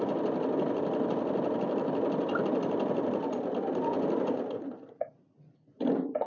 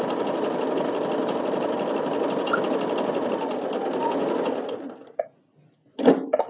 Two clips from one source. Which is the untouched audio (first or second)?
second